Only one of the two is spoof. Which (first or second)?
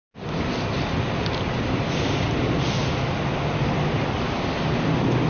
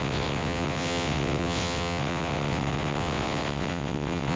second